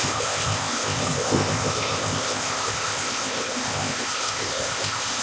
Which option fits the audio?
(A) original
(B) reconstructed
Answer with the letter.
B